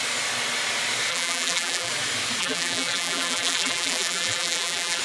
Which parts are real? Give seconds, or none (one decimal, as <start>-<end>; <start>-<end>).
0.0-1.1; 1.9-2.4

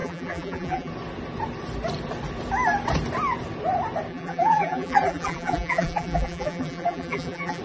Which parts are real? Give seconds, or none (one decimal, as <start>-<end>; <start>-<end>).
0.9-4.1

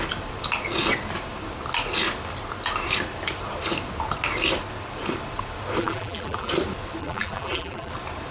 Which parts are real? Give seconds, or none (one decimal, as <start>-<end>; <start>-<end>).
0.0-5.8; 6.5-7.0; 7.9-8.3

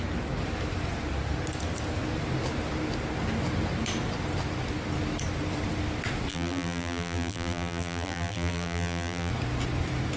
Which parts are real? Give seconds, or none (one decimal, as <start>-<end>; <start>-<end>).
0.0-6.3; 9.3-10.2

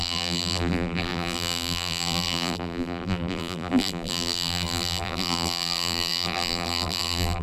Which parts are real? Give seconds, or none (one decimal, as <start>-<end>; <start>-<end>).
none

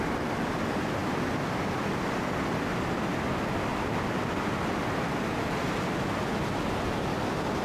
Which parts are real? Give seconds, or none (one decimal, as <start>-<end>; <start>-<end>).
0.0-1.0; 1.6-7.6

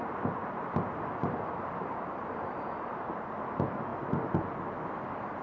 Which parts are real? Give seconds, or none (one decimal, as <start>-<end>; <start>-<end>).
0.0-1.2; 3.3-5.4